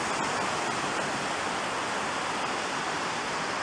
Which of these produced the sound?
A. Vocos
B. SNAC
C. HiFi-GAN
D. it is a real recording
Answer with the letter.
D